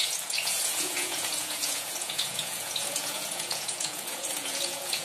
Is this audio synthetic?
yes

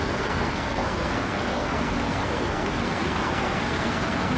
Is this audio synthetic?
yes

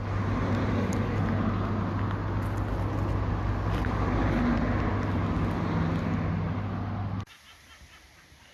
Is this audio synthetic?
no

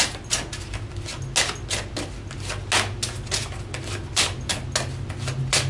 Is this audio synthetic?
no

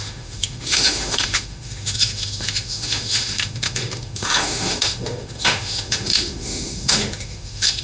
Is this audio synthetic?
yes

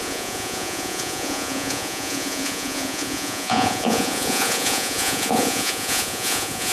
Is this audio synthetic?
yes